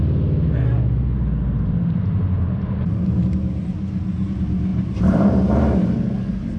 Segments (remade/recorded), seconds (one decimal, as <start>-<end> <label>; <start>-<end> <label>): 0.0-4.7 recorded; 4.7-5.9 remade; 5.9-6.6 recorded